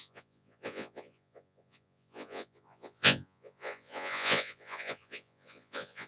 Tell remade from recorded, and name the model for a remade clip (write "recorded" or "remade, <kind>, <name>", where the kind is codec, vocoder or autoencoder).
remade, vocoder, Vocos